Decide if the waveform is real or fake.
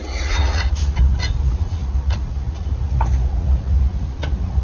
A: fake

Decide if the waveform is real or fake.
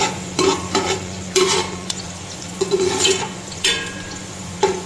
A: fake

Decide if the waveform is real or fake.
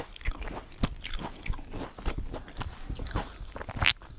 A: real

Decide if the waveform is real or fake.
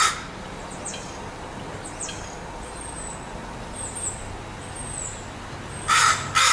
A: real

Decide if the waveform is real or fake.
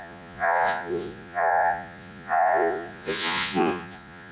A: fake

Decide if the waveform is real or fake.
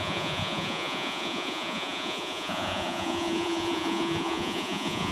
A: fake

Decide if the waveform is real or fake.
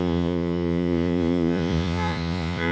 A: fake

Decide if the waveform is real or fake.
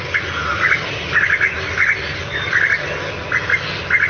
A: real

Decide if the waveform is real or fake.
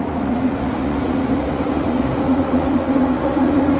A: fake